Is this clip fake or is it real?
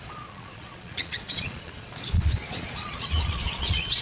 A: fake